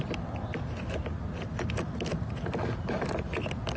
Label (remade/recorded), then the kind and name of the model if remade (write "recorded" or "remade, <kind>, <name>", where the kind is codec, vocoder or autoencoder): recorded